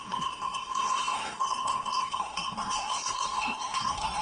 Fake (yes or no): yes